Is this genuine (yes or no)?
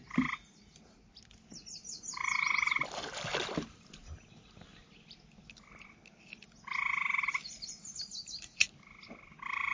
yes